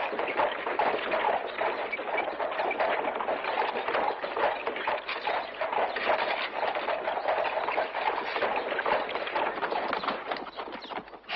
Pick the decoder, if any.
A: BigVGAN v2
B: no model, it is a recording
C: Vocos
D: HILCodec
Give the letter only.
B